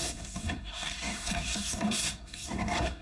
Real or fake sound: fake